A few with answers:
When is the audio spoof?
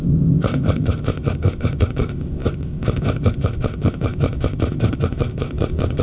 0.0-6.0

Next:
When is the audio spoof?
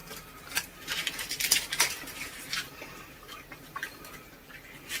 1.0-4.0